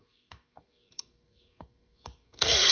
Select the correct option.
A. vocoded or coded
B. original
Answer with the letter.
A